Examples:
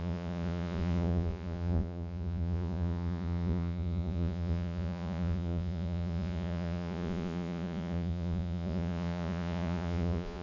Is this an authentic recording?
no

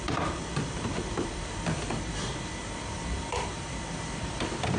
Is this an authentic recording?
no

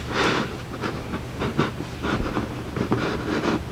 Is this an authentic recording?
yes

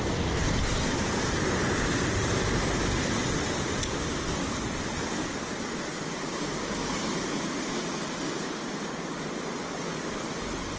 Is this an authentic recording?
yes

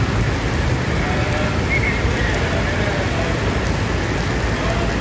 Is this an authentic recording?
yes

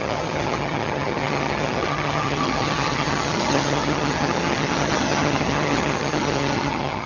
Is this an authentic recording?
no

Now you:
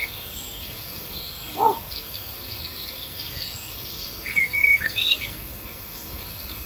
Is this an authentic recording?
no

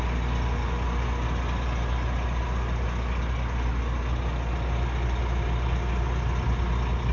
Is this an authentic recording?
yes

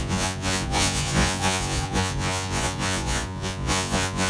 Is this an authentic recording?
no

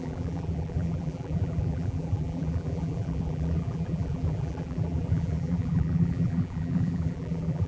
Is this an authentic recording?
no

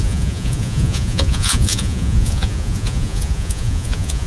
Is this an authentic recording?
no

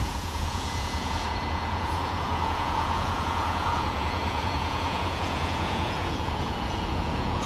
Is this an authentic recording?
no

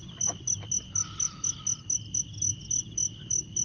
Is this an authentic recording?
yes